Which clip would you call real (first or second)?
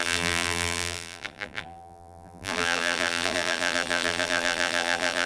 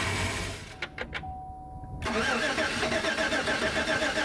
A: second